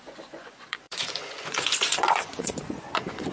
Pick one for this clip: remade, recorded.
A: remade